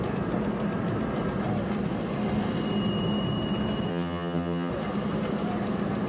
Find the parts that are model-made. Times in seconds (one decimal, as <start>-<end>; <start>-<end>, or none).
3.9-4.7